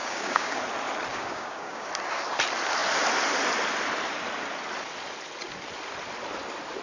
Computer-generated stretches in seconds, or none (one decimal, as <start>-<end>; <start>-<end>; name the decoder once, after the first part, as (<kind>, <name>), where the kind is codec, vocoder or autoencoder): 0.0-0.6 (codec, DAC); 1.1-1.9